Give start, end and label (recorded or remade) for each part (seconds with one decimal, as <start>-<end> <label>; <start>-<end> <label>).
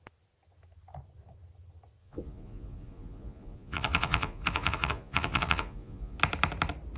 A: 0.0-2.0 recorded; 2.0-6.2 remade; 6.2-7.0 recorded